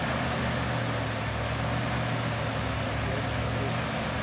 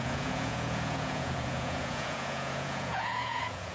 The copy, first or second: second